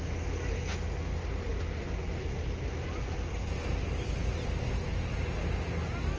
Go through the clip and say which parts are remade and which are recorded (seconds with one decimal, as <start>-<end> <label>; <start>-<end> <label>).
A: 0.0-6.2 recorded